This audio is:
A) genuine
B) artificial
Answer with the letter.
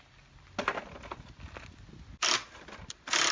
A